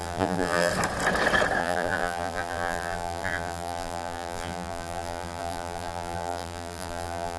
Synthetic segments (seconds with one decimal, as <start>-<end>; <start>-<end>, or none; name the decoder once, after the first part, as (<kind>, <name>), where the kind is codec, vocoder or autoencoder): 0.0-0.7 (vocoder, BigVGAN v2); 1.6-7.4